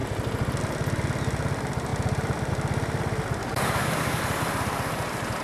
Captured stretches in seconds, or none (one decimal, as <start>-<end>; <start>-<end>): 0.0-3.4; 4.2-5.4